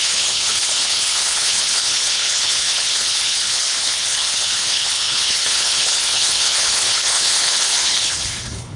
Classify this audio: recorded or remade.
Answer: remade